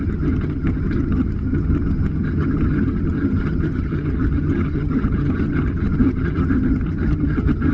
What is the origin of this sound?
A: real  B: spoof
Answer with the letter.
B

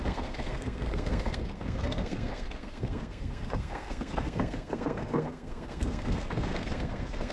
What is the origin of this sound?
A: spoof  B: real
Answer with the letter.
A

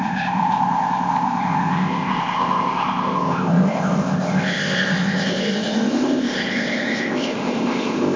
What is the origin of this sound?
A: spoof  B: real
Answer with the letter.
A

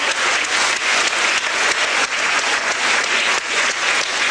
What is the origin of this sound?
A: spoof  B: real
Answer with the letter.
A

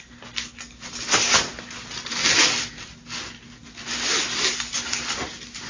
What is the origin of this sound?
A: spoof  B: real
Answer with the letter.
B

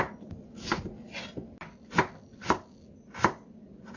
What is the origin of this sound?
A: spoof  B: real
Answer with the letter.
B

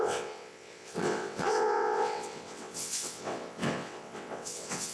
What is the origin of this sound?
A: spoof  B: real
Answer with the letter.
A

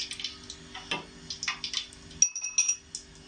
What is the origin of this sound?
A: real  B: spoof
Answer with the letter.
A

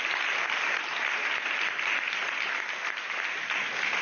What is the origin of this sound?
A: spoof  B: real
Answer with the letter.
B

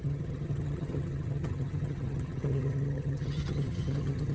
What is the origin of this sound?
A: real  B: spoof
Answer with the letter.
B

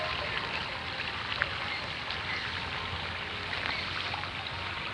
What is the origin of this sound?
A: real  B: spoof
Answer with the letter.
A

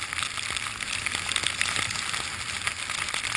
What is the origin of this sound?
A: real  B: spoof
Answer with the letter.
A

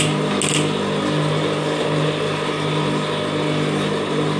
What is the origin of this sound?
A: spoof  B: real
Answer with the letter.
B